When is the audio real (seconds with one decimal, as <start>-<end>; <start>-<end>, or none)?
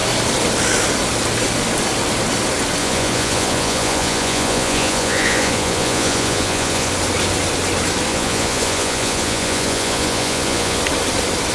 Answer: 0.0-2.8; 6.9-8.1; 10.8-11.5